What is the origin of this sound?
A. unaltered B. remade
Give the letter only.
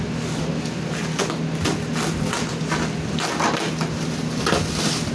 A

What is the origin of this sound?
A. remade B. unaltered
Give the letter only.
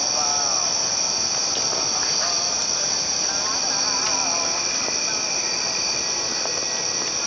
B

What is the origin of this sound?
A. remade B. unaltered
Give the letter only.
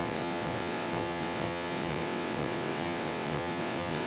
A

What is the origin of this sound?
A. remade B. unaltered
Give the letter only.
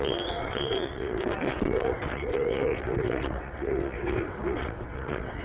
A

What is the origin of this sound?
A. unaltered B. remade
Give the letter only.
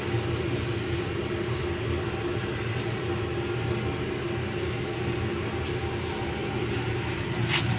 A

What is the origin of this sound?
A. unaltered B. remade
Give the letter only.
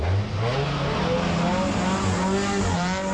A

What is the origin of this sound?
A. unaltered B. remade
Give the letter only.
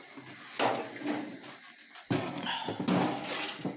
A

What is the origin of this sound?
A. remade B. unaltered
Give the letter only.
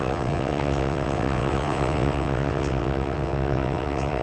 A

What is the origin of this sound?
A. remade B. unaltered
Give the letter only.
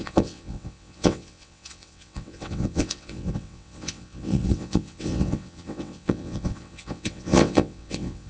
A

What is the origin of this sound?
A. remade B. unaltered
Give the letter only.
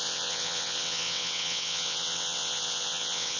A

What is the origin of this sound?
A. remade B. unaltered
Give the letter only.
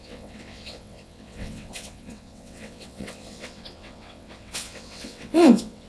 A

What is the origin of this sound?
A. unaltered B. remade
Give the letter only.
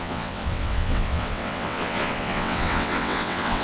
B